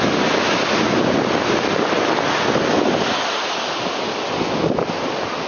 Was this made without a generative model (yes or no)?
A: yes